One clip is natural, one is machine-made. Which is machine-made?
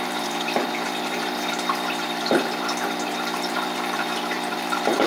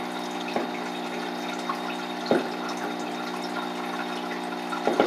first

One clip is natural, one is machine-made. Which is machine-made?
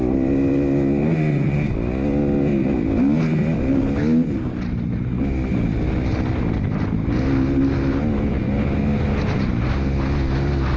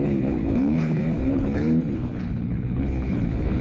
second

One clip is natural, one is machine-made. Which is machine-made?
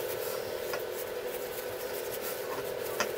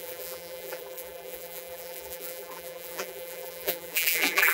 second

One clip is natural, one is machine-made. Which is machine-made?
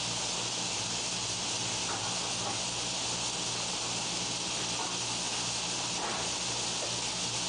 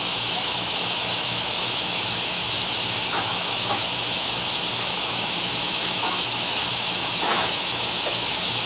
second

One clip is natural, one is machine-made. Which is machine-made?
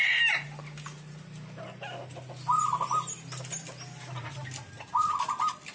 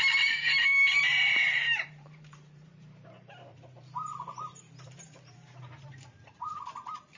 second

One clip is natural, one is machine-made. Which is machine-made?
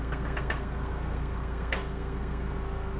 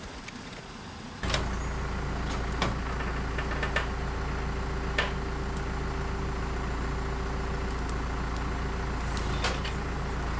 first